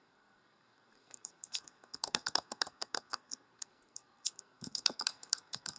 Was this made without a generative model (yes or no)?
no